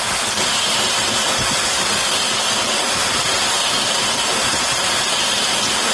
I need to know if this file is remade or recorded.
remade